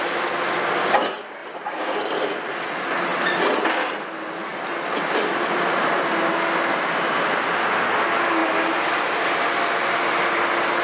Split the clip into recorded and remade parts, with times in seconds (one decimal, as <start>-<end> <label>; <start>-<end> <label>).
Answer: 0.0-4.5 recorded; 4.5-6.3 remade; 6.3-8.4 recorded; 8.4-9.2 remade; 9.2-10.8 recorded